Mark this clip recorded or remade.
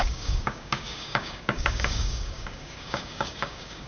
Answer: remade